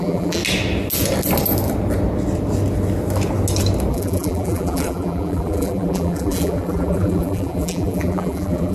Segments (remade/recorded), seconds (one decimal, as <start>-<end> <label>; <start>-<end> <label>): 0.0-0.4 remade; 0.4-3.9 recorded; 3.9-8.7 remade